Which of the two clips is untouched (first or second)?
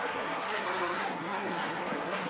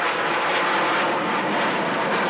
second